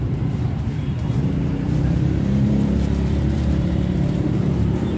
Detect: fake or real fake